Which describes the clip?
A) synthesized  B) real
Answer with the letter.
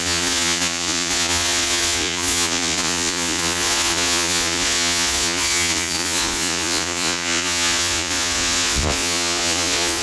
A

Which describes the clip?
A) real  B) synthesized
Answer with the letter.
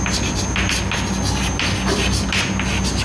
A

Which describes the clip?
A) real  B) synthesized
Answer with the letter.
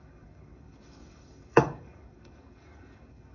B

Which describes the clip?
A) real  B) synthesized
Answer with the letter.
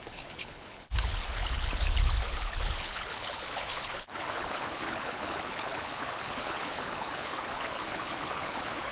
B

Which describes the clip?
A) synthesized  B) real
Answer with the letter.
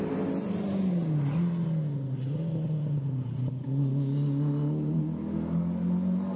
B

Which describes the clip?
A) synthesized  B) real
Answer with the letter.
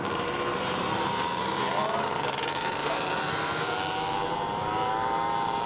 A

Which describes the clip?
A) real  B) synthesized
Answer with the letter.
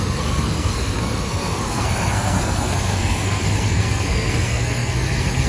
B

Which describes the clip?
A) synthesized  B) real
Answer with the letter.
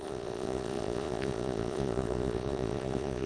A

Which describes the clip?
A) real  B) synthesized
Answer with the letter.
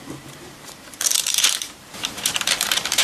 B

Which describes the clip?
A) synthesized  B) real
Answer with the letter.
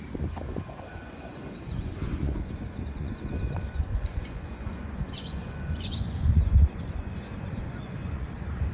A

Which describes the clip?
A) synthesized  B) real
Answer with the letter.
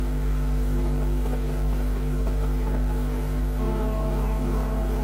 A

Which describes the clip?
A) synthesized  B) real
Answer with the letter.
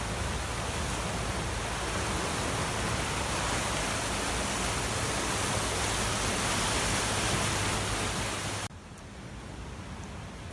B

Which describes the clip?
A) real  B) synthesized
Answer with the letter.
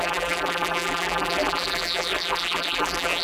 B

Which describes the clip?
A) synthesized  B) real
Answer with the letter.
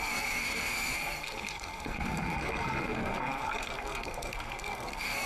A